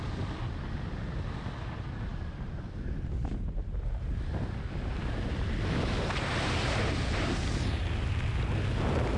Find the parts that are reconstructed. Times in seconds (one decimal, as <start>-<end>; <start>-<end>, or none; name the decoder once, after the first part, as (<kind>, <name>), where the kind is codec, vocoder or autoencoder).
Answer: none